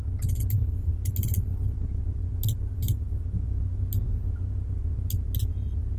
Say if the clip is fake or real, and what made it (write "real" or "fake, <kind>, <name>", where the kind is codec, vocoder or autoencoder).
real